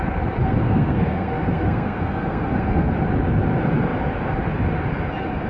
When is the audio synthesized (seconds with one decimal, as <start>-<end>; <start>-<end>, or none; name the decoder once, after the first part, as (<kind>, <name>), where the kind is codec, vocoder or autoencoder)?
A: 0.4-2.9 (codec, SNAC)